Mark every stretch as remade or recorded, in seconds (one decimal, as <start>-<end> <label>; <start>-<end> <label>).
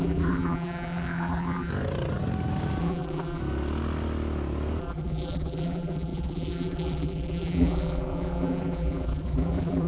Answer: 0.0-1.7 remade; 1.7-2.8 recorded; 2.8-3.4 remade; 3.4-4.8 recorded; 4.8-9.9 remade